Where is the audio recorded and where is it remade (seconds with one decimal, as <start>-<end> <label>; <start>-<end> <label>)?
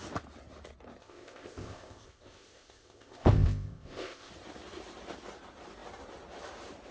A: 0.0-1.0 recorded; 1.0-4.3 remade; 4.3-6.9 recorded